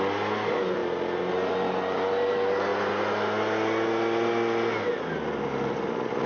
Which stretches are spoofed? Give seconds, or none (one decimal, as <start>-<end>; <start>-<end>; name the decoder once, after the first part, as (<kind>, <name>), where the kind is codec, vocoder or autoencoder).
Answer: none